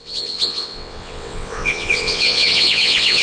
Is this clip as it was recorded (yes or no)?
no